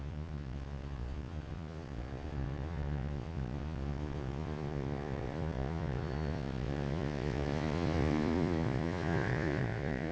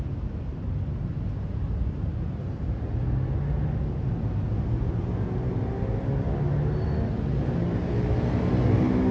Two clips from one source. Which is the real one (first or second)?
second